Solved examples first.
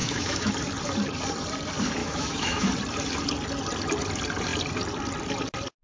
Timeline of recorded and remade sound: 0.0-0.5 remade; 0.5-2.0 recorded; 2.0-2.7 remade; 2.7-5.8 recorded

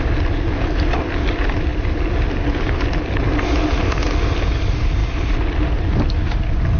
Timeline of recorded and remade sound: 0.0-6.8 recorded